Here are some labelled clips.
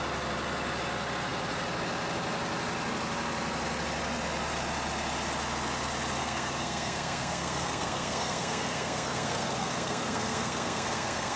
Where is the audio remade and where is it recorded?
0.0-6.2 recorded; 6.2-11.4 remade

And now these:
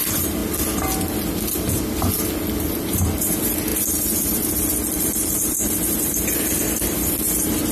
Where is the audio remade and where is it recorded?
0.0-0.4 remade; 0.4-2.7 recorded; 2.7-7.7 remade

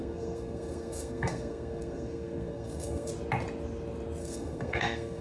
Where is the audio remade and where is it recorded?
0.0-3.1 remade; 3.1-4.2 recorded; 4.2-5.2 remade